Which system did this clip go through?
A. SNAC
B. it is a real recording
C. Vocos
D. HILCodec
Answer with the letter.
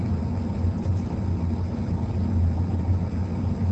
B